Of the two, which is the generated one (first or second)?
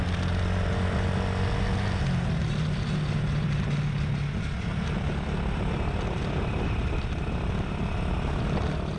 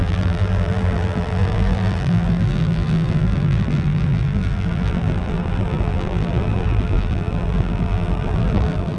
second